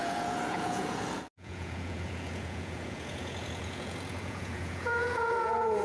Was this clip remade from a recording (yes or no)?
yes